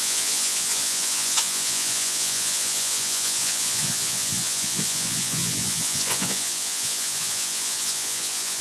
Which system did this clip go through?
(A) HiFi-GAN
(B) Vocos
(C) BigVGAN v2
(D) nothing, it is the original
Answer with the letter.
B